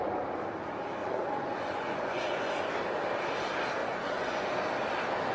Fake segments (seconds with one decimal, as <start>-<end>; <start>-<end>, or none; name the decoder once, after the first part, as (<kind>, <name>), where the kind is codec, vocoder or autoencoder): 1.0-2.7 (vocoder, Vocos); 3.8-4.5